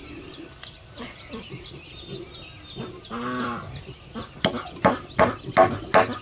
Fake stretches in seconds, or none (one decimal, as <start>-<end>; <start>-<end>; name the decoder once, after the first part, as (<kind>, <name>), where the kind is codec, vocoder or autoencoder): none